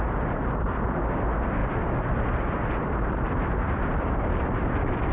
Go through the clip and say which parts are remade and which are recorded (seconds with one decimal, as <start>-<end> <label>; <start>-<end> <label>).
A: 0.0-0.4 recorded; 0.4-1.0 remade; 1.0-1.6 recorded; 1.6-5.1 remade